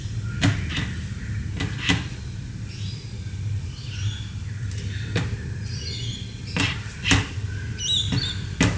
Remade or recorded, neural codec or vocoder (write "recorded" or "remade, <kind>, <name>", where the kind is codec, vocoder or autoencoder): recorded